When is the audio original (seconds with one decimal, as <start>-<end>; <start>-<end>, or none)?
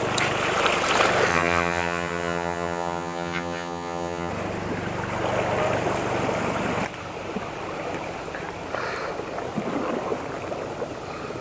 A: 0.0-1.3; 4.3-11.4